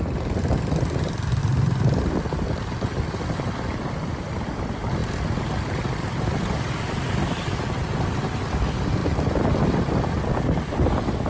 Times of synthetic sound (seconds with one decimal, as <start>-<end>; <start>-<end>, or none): 0.0-1.4; 2.0-5.0; 7.1-11.3